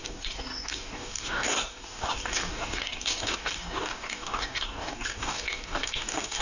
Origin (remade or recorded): remade